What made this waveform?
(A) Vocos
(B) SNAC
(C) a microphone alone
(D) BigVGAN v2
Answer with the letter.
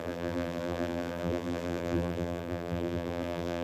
D